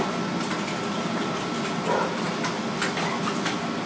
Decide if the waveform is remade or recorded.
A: recorded